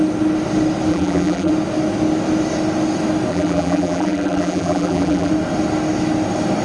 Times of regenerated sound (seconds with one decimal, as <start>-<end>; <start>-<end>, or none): 0.9-1.5; 3.3-5.3